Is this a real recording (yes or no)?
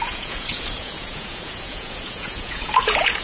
no